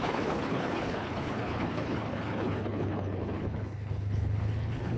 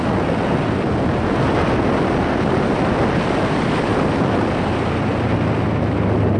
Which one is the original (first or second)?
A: second